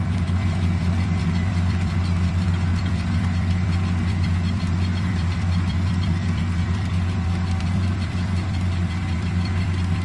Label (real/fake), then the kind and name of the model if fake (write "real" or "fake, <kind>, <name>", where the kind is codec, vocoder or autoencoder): fake, vocoder, BigVGAN v2